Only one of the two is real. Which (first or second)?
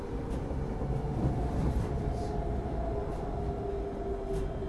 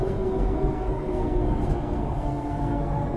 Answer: first